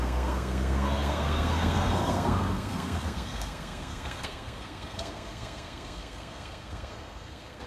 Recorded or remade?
remade